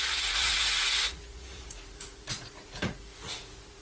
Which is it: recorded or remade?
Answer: remade